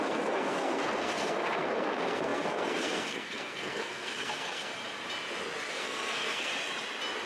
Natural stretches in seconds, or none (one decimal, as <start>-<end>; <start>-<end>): 4.7-5.7; 6.5-7.3